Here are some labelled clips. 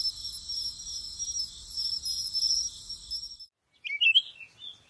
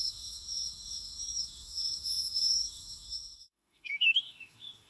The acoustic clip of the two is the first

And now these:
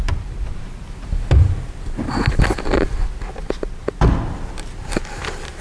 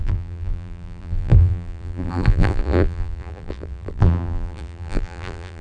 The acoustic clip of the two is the first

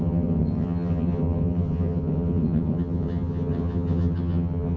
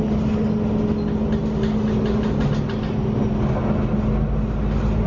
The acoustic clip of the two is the second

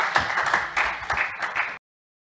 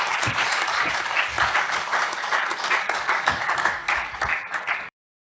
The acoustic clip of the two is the first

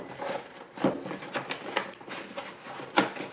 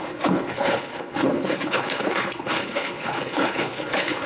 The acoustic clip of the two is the first